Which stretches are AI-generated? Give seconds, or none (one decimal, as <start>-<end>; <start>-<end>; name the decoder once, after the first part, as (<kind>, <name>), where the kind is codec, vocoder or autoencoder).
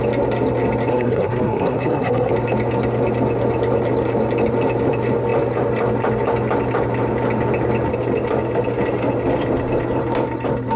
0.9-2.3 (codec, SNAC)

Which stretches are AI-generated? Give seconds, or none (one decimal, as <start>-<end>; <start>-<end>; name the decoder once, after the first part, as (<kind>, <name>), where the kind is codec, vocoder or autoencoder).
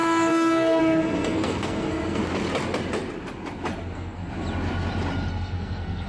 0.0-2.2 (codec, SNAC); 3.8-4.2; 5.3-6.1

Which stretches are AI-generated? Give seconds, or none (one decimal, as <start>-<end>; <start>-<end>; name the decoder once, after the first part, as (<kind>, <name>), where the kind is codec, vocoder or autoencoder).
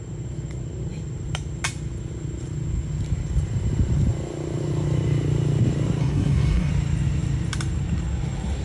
6.0-6.7 (codec, SNAC)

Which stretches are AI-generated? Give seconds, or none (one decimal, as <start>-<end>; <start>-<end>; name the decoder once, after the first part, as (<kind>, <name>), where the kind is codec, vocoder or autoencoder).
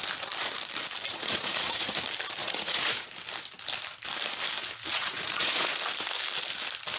1.1-1.9 (vocoder, Vocos); 2.4-3.1; 4.9-5.7